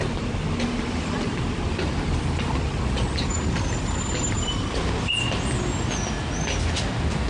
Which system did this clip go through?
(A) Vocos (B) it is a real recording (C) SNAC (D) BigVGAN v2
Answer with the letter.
B